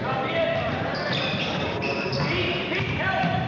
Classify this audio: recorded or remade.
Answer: remade